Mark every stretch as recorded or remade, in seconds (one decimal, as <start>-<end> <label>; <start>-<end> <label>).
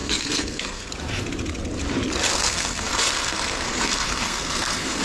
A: 0.0-0.9 remade; 0.9-2.3 recorded; 2.3-5.0 remade